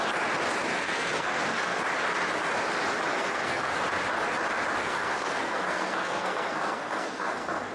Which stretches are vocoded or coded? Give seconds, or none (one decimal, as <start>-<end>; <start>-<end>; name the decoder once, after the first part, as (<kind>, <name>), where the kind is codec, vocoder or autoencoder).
0.7-1.8 (codec, SNAC); 3.1-3.7; 4.8-7.7

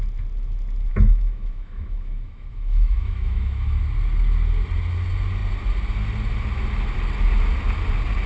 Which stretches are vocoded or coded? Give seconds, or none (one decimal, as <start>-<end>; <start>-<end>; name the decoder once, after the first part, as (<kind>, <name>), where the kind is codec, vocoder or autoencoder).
0.9-3.8 (autoencoder, DAC-VAE)

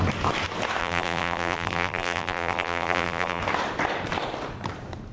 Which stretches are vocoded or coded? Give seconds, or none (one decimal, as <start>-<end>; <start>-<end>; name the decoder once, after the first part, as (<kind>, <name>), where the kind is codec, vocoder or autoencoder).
0.8-3.4 (vocoder, BigVGAN v2)

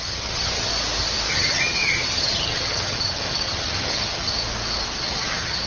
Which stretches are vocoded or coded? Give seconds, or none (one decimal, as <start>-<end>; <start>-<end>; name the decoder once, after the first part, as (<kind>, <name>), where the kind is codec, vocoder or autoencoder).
0.0-0.7 (vocoder, HiFi-GAN); 1.3-4.3; 5.0-5.7

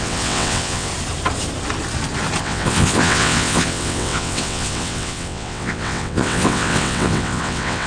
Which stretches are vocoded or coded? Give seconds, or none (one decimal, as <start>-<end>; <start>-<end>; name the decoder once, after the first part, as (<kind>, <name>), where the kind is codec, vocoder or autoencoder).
0.0-0.9 (vocoder, WaveNeXt); 2.4-7.9

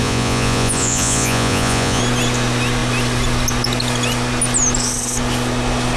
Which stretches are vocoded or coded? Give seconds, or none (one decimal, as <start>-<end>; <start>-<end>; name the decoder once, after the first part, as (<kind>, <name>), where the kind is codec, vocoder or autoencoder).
0.0-2.0 (vocoder, Vocos)

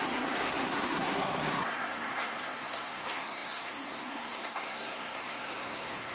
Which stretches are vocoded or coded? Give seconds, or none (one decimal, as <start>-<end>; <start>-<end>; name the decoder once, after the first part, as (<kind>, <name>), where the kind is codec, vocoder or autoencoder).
0.0-6.1 (codec, SNAC)